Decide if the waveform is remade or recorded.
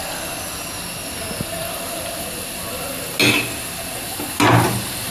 recorded